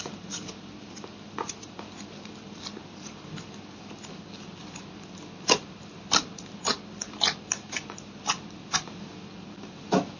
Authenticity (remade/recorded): recorded